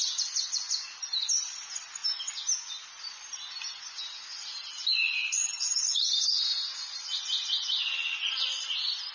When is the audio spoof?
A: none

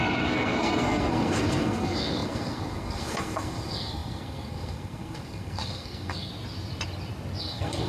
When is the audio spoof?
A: 0.0-6.3 (codec, SNAC); 7.4-7.9

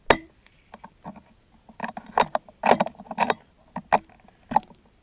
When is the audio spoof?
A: none